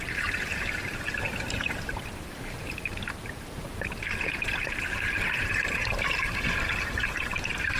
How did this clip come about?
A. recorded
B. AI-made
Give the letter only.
B